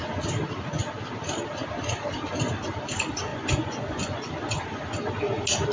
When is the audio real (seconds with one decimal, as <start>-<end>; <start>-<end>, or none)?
0.0-3.3; 4.3-5.7